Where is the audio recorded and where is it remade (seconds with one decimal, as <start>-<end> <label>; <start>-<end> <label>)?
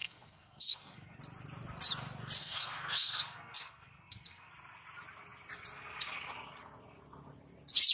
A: 0.0-1.2 remade; 1.2-2.4 recorded; 2.4-4.5 remade; 4.5-7.9 recorded